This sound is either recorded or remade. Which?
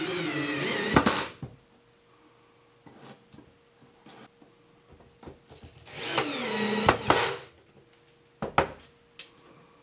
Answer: recorded